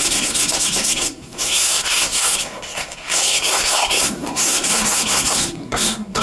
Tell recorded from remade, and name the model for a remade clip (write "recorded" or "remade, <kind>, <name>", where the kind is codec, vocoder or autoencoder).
remade, codec, SNAC